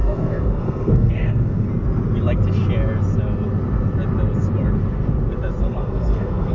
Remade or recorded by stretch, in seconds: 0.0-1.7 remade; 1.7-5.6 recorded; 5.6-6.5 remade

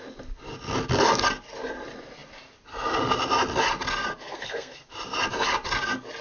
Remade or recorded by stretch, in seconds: 0.0-4.1 recorded; 4.1-4.9 remade; 4.9-6.2 recorded

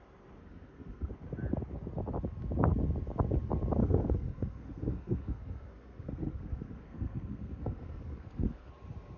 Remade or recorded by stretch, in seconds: 0.0-0.4 recorded; 0.4-1.1 remade; 1.1-3.8 recorded; 3.8-8.7 remade; 8.7-9.2 recorded

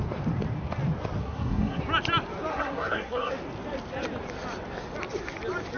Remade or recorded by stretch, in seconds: 0.0-1.2 recorded; 1.2-1.8 remade; 1.8-2.5 recorded; 2.5-3.3 remade; 3.3-5.8 recorded

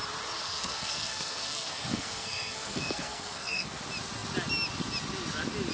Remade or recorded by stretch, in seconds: 0.0-0.4 recorded; 0.4-3.8 remade; 3.8-5.7 recorded

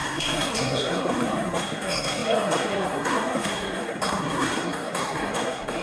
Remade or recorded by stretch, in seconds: 0.0-5.8 remade